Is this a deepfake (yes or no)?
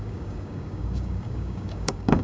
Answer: yes